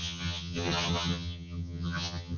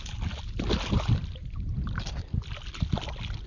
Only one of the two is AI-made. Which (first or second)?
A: first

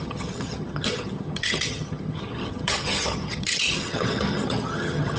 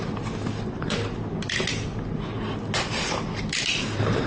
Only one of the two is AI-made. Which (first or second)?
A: first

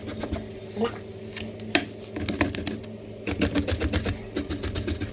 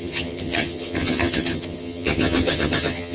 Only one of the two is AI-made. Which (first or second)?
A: second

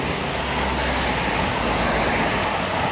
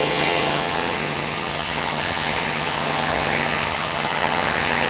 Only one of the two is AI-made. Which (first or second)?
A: second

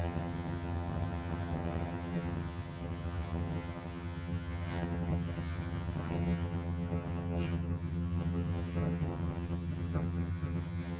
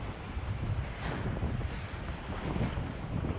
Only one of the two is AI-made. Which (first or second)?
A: first